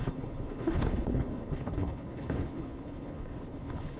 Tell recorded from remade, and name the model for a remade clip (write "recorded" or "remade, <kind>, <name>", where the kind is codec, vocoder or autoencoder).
remade, codec, HILCodec